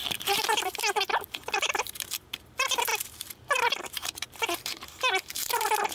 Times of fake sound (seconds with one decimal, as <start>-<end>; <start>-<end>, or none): 0.0-5.9